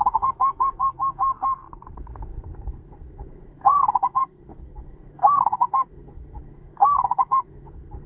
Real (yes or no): no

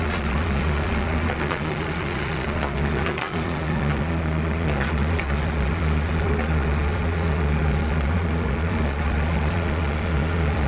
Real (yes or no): no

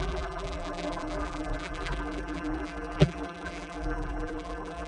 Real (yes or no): no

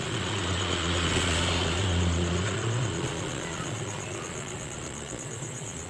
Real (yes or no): no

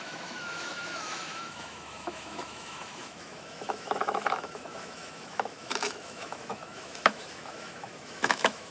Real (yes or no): no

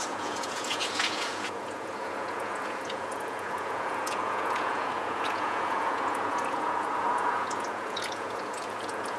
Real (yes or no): no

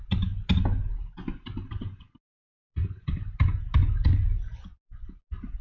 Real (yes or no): yes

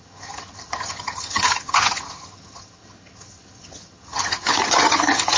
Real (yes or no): no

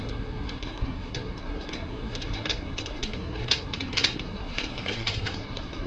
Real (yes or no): no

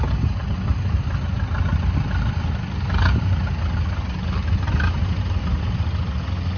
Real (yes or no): yes